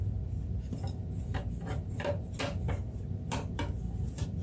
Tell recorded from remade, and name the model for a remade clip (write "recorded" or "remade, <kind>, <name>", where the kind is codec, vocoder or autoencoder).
recorded